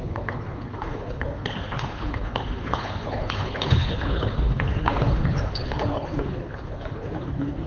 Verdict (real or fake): fake